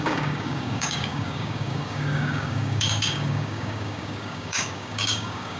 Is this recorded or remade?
remade